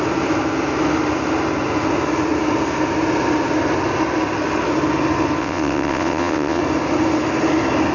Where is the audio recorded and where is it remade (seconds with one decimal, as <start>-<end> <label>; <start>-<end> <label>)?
0.0-5.4 recorded; 5.4-6.6 remade; 6.6-7.9 recorded